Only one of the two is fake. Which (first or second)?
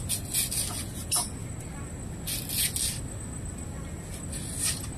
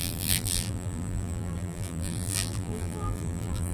second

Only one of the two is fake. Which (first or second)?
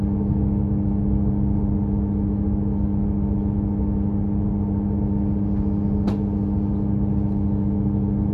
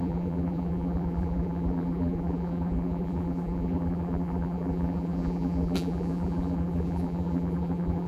second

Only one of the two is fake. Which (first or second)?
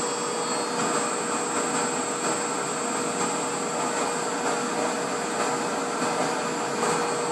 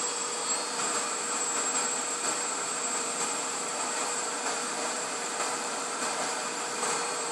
second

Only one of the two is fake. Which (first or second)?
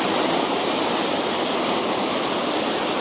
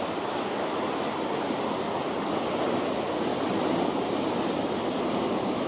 first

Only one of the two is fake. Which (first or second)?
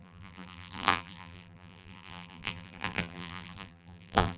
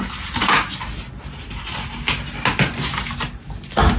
first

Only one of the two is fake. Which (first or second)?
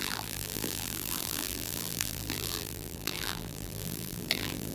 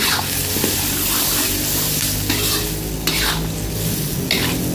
first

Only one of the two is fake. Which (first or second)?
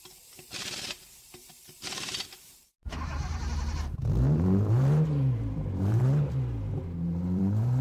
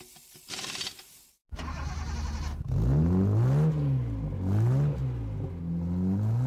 first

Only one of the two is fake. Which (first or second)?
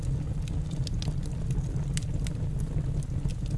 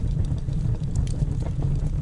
second